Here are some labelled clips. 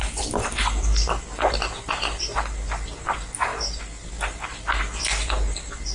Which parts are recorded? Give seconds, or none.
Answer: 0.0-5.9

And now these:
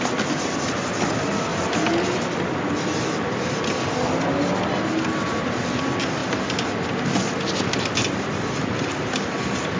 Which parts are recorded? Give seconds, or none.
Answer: 0.0-9.8